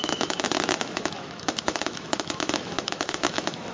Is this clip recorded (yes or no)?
no